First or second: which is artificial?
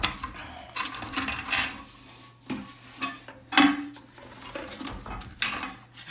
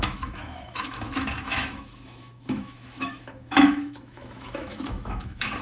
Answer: second